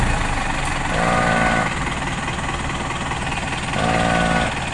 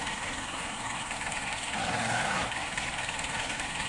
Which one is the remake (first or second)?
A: second